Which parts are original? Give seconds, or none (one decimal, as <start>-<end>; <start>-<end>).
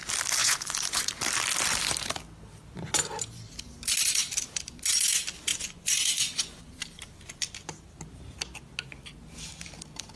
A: 0.0-0.4; 1.1-5.5; 6.7-10.2